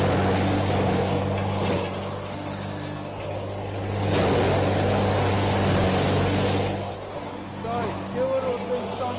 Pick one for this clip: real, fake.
real